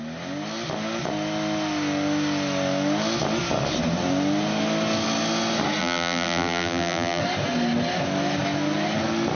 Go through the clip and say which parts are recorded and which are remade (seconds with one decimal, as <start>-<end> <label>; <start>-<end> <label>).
0.0-5.8 recorded; 5.8-7.2 remade; 7.2-9.3 recorded